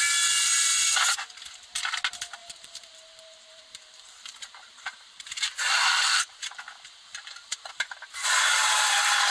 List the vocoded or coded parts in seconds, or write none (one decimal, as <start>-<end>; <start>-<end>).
2.4-7.7